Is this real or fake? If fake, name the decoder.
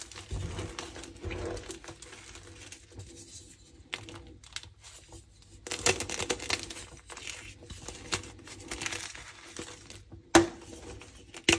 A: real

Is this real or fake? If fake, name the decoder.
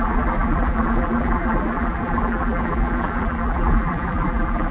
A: fake, vocoder, BigVGAN v2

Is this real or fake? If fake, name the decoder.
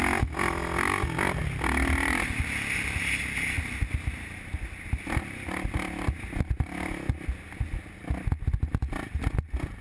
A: real